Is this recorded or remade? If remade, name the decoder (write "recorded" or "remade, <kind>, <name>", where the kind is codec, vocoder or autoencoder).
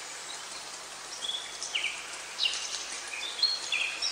remade, vocoder, BigVGAN v2